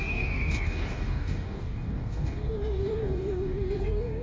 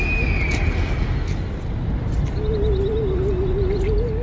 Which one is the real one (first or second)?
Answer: second